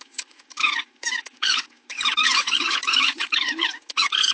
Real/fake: fake